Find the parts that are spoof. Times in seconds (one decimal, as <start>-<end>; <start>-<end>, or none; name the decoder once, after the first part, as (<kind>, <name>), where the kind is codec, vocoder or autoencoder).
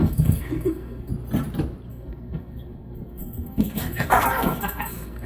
0.0-1.1 (codec, SNAC); 1.9-5.3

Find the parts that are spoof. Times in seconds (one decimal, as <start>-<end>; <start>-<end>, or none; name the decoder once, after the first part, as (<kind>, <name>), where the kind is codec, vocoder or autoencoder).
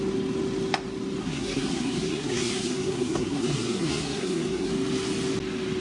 1.2-4.7 (codec, SNAC)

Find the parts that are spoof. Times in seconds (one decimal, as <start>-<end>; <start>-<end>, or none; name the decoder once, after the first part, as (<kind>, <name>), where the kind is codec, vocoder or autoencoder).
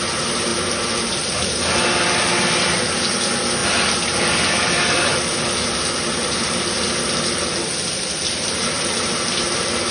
0.5-1.4 (vocoder, BigVGAN v2); 3.6-4.8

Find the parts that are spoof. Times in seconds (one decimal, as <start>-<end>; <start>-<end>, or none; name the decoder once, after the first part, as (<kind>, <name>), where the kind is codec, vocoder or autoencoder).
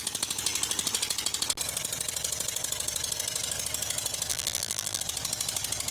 4.3-5.0 (vocoder, BigVGAN v2)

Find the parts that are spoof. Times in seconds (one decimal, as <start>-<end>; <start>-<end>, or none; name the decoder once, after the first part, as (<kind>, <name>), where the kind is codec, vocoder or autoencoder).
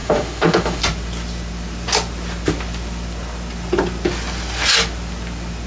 0.0-0.8 (autoencoder, DAC-VAE)